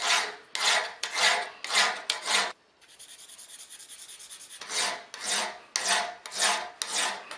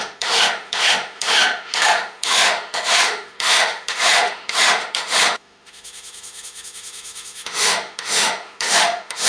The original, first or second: first